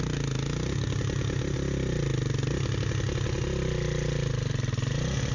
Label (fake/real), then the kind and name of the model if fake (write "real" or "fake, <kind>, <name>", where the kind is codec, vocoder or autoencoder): real